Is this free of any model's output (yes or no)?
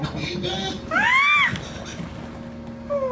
yes